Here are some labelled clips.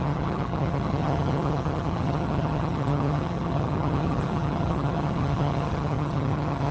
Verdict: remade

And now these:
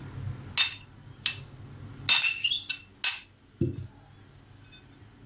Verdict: recorded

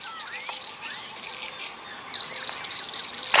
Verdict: recorded